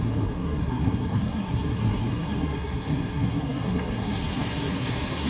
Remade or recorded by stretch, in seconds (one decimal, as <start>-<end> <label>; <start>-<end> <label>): 0.0-5.3 remade